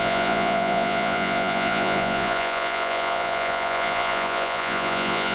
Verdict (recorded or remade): remade